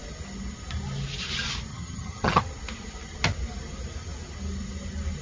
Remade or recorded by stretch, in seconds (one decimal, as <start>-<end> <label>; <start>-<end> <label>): 0.0-1.7 recorded; 1.7-2.4 remade; 2.4-5.2 recorded